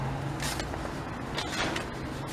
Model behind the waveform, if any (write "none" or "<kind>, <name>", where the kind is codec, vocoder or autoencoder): none